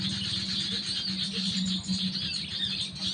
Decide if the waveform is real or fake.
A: real